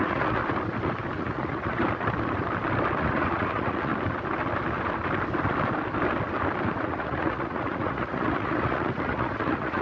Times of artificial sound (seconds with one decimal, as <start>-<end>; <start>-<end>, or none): 0.0-0.4; 1.2-1.8; 3.0-3.9; 6.7-9.8